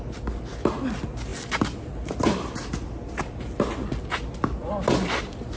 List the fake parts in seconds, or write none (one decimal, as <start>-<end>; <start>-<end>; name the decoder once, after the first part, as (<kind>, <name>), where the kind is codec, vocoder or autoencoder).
none